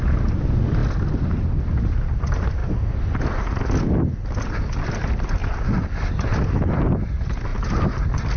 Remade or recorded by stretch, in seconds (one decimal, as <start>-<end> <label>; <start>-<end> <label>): 0.0-0.8 remade; 0.8-1.4 recorded; 1.4-2.6 remade; 2.6-4.4 recorded; 4.4-5.4 remade; 5.4-6.3 recorded; 6.3-7.5 remade; 7.5-8.4 recorded